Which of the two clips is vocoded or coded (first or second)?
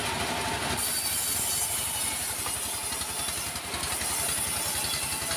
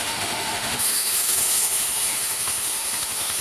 second